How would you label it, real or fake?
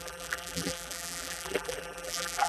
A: fake